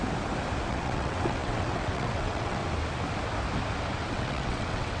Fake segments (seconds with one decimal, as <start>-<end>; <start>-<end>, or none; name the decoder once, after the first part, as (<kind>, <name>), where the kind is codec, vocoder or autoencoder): 0.7-2.6 (vocoder, WaveNeXt); 4.1-5.0